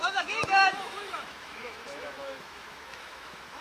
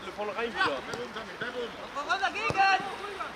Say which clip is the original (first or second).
second